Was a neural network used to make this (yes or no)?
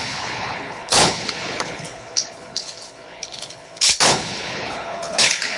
yes